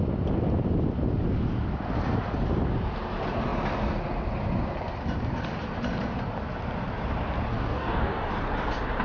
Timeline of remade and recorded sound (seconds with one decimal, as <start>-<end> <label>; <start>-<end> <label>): 0.0-7.5 recorded; 7.5-8.3 remade; 8.3-9.0 recorded